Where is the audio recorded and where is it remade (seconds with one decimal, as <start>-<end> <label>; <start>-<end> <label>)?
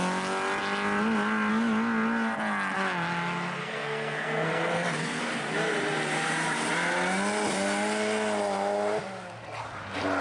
0.0-3.6 recorded; 3.6-5.2 remade; 5.2-10.2 recorded